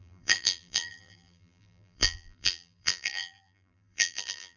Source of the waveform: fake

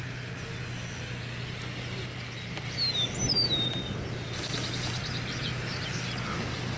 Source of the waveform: real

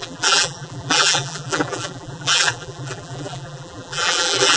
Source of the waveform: fake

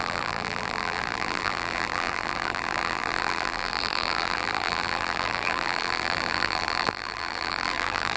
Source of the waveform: fake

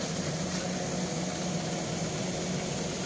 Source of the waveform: real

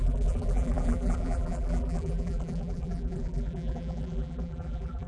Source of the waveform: fake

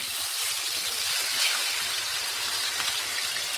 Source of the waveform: fake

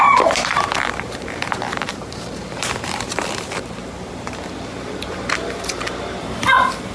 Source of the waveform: fake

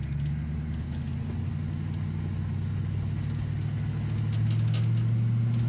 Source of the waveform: real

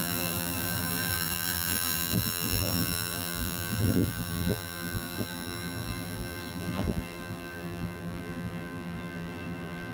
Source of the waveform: fake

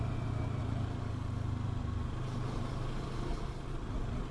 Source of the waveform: real